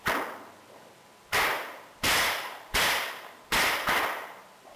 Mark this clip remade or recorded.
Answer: recorded